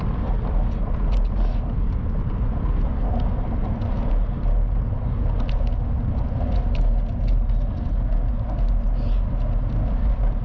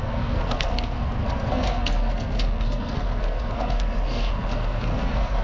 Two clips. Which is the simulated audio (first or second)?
second